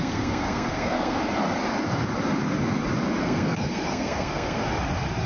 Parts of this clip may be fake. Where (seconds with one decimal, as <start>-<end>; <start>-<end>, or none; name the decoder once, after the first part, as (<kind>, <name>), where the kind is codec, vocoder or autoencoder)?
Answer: 0.0-1.2 (codec, SNAC); 3.2-4.6